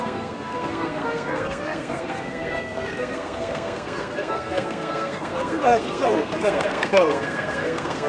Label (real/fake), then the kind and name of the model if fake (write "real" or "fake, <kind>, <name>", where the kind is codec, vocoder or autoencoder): fake, codec, SNAC